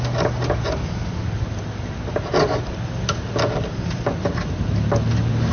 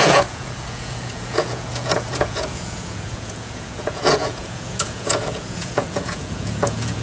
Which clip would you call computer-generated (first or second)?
second